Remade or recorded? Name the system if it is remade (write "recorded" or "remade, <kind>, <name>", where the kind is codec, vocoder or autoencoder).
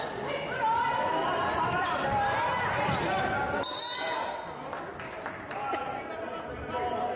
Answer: recorded